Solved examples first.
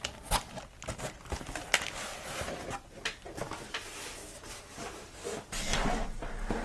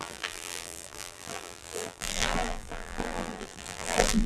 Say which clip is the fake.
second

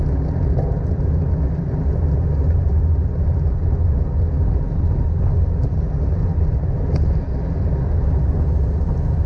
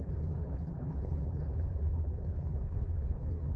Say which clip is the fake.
second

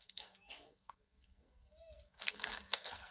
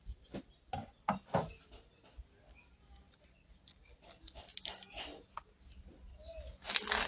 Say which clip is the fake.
first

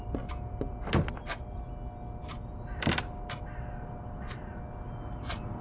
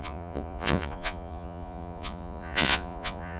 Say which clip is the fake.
second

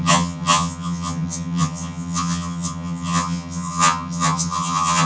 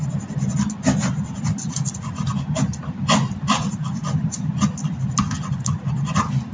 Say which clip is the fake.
first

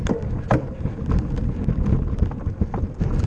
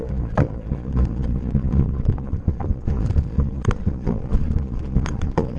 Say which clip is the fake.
second